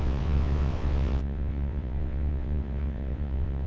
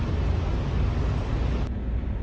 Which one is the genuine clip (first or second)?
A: second